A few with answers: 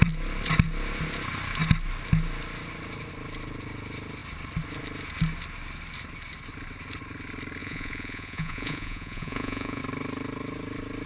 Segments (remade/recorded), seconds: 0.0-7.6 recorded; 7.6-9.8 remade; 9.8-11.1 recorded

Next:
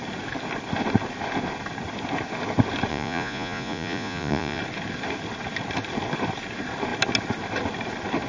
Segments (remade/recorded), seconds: 0.0-2.9 recorded; 2.9-4.6 remade; 4.6-8.3 recorded

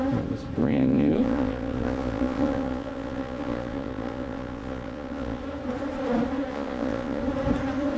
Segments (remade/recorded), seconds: 0.0-0.6 recorded; 0.6-5.4 remade; 5.4-6.5 recorded; 6.5-7.2 remade; 7.2-8.0 recorded

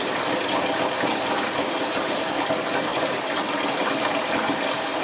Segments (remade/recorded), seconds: 0.0-5.0 recorded

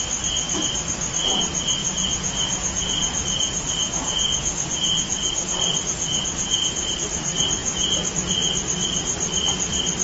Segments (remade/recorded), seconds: 0.0-1.8 recorded; 1.8-6.9 remade; 6.9-7.6 recorded; 7.6-8.1 remade; 8.1-10.0 recorded

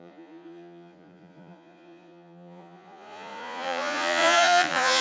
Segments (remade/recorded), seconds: 0.0-5.0 remade

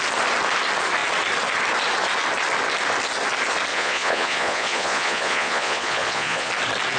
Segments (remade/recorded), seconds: 0.0-3.7 recorded; 3.7-6.5 remade; 6.5-7.0 recorded

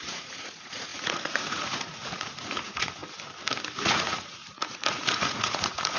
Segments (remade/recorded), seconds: 0.0-3.0 remade; 3.0-3.8 recorded; 3.8-6.0 remade